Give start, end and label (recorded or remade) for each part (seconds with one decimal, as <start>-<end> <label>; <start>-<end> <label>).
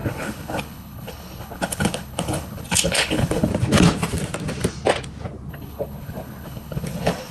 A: 0.0-3.5 remade; 3.5-5.5 recorded; 5.5-7.3 remade